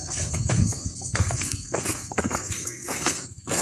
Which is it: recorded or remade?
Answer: remade